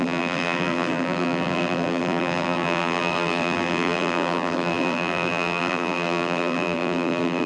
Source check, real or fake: fake